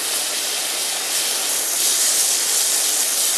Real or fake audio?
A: real